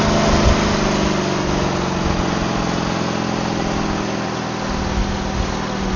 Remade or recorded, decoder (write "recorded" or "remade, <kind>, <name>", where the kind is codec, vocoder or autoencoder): recorded